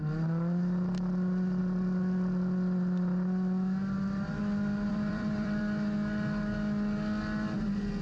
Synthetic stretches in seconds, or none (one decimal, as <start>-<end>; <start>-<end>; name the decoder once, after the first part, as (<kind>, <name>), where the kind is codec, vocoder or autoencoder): 4.9-5.6 (vocoder, BigVGAN v2)